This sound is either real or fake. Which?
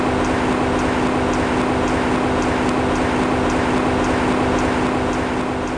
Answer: real